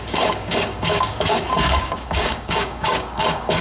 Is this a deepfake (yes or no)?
yes